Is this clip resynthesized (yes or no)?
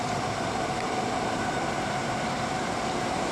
yes